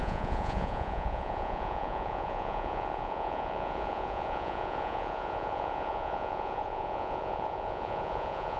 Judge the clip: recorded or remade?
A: remade